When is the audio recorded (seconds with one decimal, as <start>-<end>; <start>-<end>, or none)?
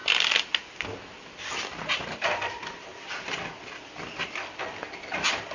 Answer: 0.0-5.5